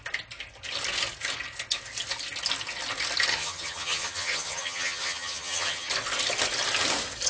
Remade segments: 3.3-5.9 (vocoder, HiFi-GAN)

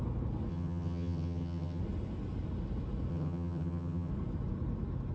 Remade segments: 0.5-1.8 (vocoder, HiFi-GAN); 3.1-4.1

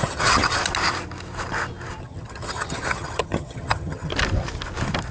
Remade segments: 0.0-0.6 (vocoder, HiFi-GAN); 2.0-4.1

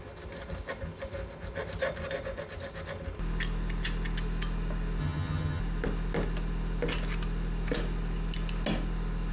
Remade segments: 5.0-5.6 (vocoder, HiFi-GAN)

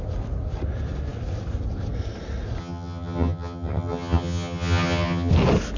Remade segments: 2.6-5.3 (vocoder, HiFi-GAN)